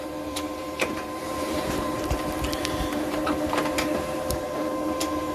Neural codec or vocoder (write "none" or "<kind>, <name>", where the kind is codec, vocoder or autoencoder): vocoder, BigVGAN v2